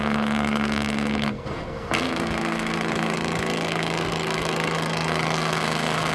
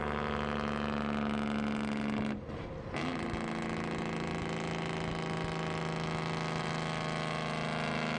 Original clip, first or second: second